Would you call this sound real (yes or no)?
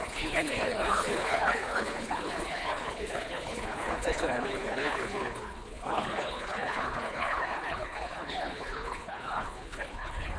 no